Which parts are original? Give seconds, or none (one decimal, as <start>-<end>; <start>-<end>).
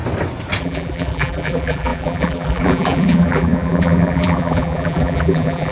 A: 0.0-0.6